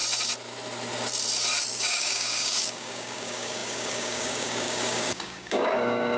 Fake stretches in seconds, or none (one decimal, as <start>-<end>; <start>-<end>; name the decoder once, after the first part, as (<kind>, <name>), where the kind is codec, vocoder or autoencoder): 1.7-6.2 (codec, DAC)